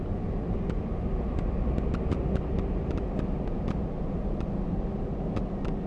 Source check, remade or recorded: recorded